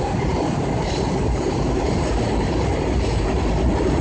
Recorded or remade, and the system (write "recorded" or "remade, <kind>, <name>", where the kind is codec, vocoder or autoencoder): remade, vocoder, BigVGAN v2